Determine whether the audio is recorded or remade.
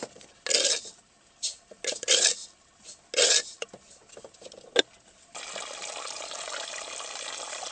recorded